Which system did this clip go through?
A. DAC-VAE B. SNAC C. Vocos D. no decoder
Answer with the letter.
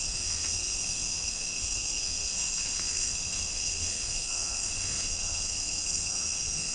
B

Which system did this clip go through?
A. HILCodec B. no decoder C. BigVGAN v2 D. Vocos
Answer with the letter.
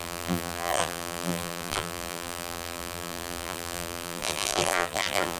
C